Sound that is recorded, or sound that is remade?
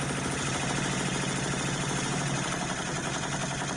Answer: recorded